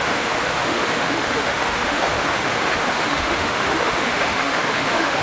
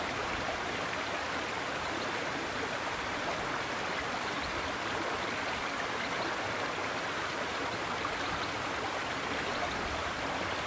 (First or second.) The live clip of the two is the second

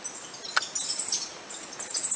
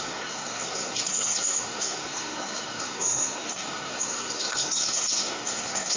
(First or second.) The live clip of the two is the first